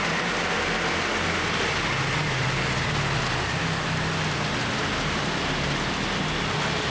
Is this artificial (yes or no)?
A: no